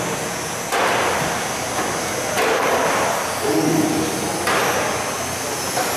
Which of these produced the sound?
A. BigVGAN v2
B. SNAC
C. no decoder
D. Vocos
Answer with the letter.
C